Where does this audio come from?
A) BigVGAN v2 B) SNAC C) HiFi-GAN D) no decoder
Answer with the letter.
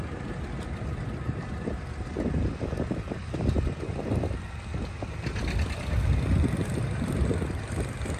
D